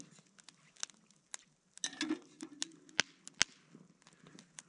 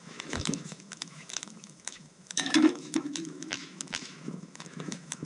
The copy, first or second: second